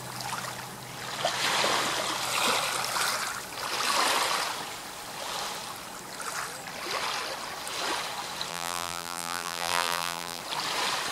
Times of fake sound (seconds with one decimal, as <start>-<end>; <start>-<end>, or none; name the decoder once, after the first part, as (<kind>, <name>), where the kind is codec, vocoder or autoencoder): 8.5-10.4 (vocoder, BigVGAN v2)